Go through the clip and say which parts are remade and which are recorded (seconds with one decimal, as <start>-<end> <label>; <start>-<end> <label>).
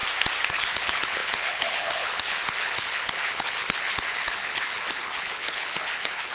0.0-0.5 recorded; 0.5-6.3 remade